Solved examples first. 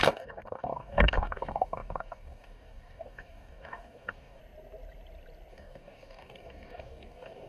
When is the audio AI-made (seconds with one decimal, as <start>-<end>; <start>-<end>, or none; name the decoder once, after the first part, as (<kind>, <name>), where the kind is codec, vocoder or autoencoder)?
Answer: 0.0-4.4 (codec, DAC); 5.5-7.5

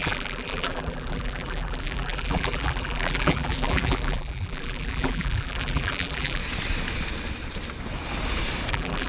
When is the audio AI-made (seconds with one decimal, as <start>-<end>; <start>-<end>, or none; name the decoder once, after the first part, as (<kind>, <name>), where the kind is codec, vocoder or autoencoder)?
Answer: 0.0-6.4 (vocoder, BigVGAN v2); 8.7-9.1

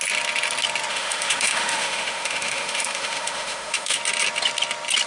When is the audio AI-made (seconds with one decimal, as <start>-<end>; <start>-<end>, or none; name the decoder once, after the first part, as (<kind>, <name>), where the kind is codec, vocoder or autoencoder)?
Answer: 0.9-4.0 (autoencoder, DAC-VAE)

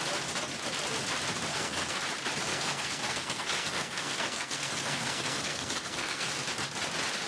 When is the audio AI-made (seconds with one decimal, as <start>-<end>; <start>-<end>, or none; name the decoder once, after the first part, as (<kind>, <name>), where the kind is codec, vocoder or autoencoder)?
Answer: 1.5-2.0 (codec, SNAC); 2.5-6.3

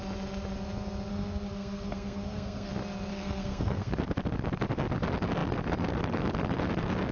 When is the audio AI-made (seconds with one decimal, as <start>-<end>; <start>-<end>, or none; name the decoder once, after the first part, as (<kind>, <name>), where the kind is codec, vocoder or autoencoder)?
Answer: 1.1-2.7 (codec, SNAC); 3.1-3.9

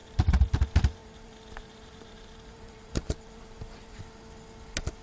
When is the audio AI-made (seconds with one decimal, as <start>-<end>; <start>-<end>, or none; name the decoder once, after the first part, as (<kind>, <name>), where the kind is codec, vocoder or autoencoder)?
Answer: 0.0-0.6 (vocoder, BigVGAN v2); 1.0-4.0

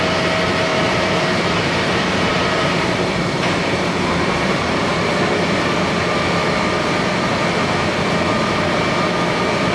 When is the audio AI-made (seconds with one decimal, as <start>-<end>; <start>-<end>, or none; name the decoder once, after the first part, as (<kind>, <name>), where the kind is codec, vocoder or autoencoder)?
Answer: 0.7-5.1 (vocoder, BigVGAN v2)